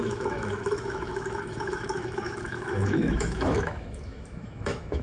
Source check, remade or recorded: remade